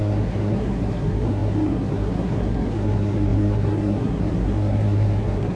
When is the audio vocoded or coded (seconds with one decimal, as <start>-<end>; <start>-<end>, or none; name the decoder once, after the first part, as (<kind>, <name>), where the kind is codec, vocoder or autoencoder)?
0.0-5.6 (codec, SNAC)